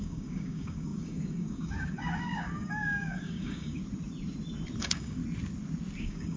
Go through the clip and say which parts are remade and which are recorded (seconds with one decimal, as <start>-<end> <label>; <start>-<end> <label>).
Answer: 0.0-3.8 remade; 3.8-4.8 recorded; 4.8-5.2 remade; 5.2-6.0 recorded; 6.0-6.4 remade